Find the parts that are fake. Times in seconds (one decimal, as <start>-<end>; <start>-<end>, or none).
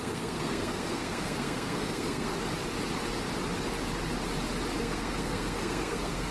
0.0-2.3; 4.8-6.3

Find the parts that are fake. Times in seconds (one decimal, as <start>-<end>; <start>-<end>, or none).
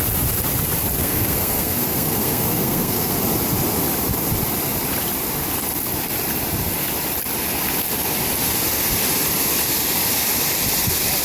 1.0-3.2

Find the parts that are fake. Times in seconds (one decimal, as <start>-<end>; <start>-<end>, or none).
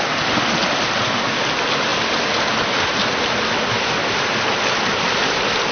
none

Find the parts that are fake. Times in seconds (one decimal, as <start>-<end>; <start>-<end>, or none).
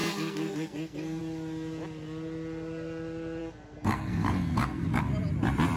0.0-1.2; 3.4-5.0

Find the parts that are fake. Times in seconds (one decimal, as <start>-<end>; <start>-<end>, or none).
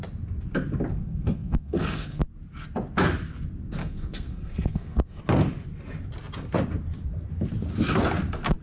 0.9-2.2; 3.8-5.2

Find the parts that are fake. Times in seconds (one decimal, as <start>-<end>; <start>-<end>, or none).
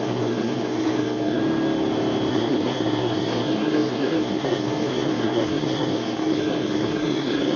0.0-1.4; 2.3-7.6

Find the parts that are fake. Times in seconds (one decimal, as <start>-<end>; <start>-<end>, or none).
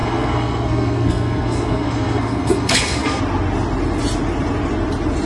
0.0-3.2